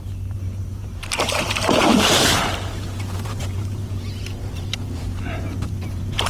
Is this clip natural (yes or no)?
no